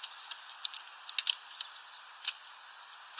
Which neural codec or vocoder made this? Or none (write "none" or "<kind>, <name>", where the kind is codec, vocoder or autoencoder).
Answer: none